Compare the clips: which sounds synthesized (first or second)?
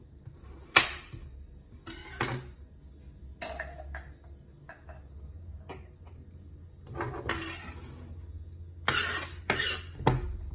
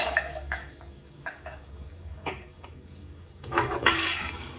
second